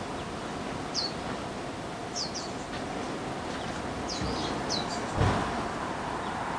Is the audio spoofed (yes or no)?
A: no